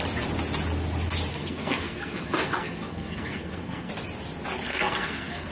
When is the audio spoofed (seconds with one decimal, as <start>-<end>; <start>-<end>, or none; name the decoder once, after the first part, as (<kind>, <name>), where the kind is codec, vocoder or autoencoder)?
1.3-3.9 (codec, SNAC); 4.7-5.5